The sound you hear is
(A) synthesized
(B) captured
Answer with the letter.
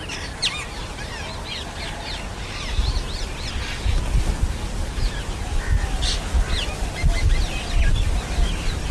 B